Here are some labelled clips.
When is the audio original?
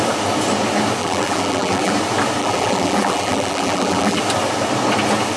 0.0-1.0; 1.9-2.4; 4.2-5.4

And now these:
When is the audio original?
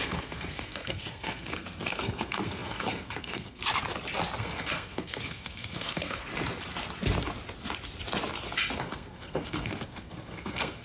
3.6-4.4; 6.3-8.8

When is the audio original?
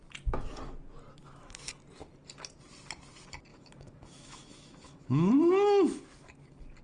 0.0-1.2; 1.7-3.5; 5.3-6.8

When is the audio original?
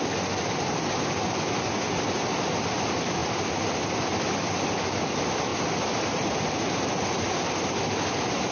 0.0-3.2; 4.6-5.5; 6.8-8.5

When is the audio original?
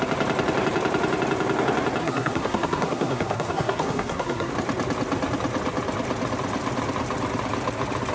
0.0-2.0; 4.5-8.1